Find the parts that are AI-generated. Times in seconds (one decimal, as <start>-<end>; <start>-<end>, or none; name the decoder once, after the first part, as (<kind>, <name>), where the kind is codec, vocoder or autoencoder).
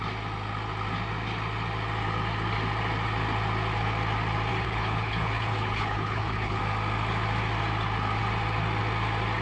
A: 4.5-6.6 (codec, HILCodec)